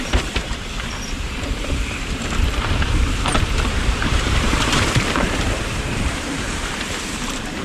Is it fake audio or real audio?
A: fake